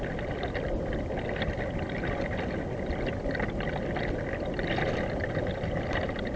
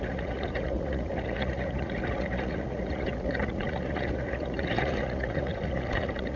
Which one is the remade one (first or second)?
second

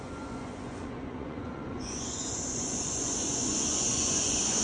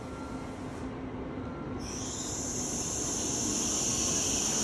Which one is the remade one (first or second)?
first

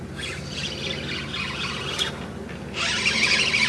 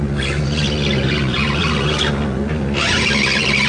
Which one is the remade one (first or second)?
second